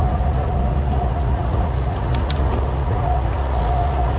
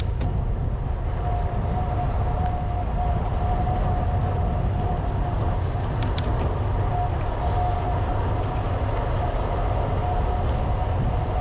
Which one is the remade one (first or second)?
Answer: first